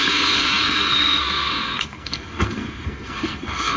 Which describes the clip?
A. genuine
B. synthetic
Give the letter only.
B